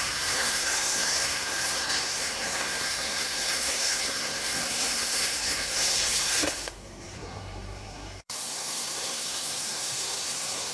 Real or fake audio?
fake